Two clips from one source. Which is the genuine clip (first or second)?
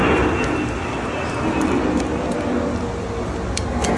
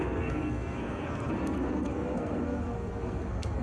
first